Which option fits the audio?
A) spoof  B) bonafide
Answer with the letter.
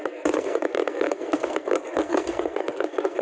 A